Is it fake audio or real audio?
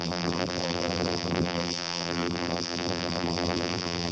fake